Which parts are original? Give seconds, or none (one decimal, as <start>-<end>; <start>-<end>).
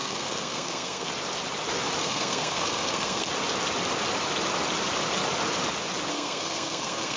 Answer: 1.1-2.0; 3.3-6.1